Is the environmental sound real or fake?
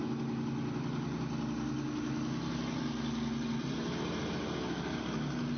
real